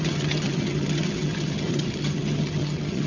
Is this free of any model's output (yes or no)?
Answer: no